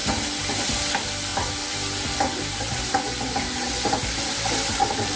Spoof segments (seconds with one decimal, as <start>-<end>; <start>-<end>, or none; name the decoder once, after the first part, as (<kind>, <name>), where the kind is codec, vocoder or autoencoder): 0.0-0.6 (vocoder, BigVGAN v2)